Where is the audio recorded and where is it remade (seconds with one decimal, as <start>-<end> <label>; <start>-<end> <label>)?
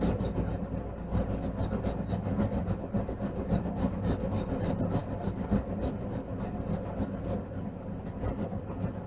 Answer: 0.0-9.1 recorded